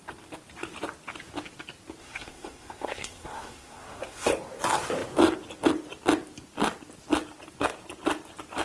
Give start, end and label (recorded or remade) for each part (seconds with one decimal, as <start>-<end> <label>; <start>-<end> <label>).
0.0-2.0 recorded; 2.0-4.3 remade; 4.3-8.6 recorded